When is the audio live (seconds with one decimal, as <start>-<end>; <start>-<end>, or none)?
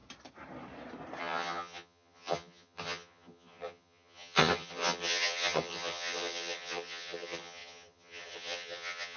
0.0-1.2